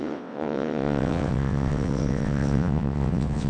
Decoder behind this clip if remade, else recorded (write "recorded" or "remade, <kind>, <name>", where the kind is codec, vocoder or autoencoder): remade, vocoder, WaveNeXt